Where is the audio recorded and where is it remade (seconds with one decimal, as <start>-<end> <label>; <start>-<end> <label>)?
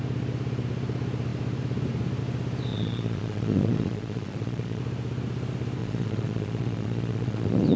0.0-2.7 recorded; 2.7-4.8 remade; 4.8-5.8 recorded; 5.8-7.8 remade